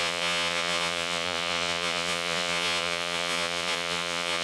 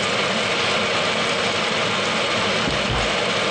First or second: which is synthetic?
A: first